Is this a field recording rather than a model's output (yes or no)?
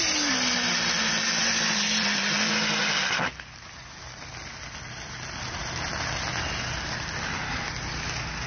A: yes